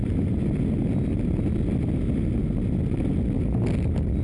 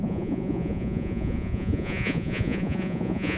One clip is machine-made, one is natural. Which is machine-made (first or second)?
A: second